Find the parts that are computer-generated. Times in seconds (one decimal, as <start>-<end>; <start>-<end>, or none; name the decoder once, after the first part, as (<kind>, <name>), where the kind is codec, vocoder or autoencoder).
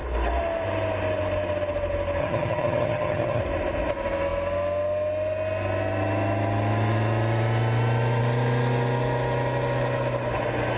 2.2-3.4 (vocoder, HiFi-GAN)